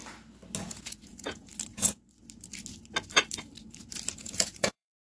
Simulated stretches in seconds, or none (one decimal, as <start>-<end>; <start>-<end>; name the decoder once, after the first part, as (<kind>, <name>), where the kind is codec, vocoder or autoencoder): 0.6-1.5 (vocoder, Vocos); 4.1-5.1